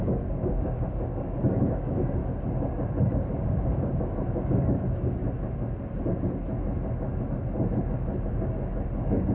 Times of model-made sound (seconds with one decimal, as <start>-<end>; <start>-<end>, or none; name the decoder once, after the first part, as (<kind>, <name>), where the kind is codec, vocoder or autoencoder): 0.0-2.2 (codec, DAC); 3.1-5.2; 8.3-9.3